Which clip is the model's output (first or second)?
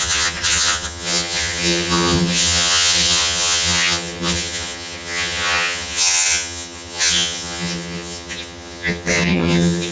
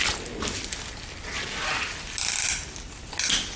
first